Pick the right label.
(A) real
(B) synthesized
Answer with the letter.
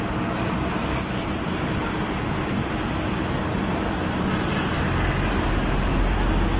A